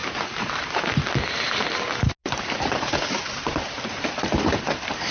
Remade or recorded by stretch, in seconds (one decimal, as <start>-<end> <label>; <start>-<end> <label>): 0.0-1.1 remade; 1.1-2.2 recorded; 2.2-5.1 remade